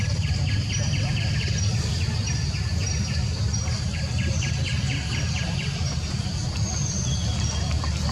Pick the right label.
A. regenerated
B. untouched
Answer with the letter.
B